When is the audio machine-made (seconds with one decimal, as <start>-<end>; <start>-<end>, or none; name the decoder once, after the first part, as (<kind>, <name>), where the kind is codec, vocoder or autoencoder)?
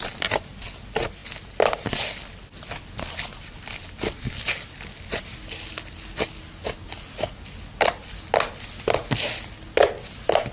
none